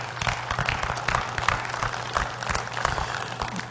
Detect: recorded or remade recorded